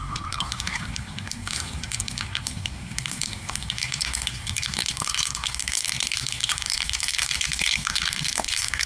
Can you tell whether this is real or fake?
fake